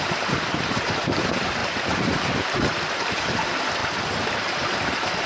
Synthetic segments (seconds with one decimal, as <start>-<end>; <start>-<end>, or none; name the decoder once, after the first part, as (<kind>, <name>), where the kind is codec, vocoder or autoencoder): 0.0-3.8 (vocoder, BigVGAN v2); 4.3-5.3